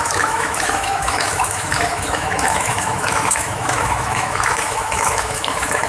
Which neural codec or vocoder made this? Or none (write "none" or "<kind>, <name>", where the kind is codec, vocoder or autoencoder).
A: autoencoder, DAC-VAE